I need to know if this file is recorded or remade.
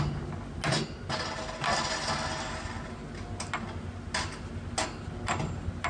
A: recorded